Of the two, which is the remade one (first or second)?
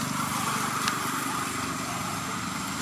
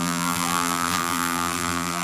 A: second